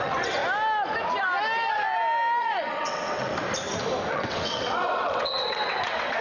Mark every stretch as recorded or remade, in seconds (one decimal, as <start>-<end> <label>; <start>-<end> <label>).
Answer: 0.0-0.4 remade; 0.4-2.4 recorded; 2.4-3.3 remade; 3.3-4.1 recorded; 4.1-6.2 remade